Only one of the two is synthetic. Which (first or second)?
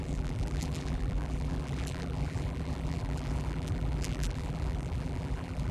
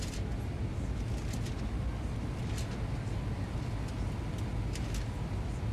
first